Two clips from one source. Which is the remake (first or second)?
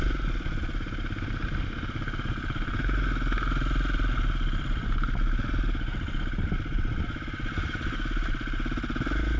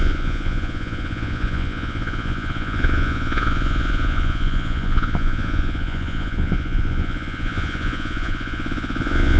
second